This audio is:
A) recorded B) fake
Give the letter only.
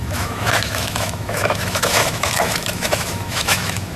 B